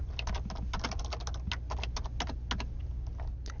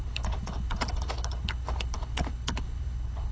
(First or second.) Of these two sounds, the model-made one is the second